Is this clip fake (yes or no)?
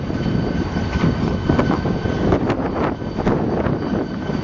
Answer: no